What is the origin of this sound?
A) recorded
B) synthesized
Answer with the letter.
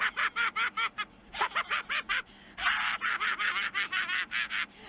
A